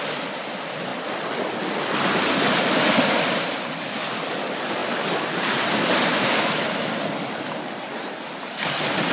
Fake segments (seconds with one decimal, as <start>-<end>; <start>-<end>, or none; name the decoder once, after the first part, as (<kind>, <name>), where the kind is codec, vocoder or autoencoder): 0.0-0.9 (vocoder, BigVGAN v2); 3.3-9.1